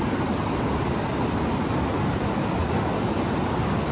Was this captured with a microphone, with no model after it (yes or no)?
yes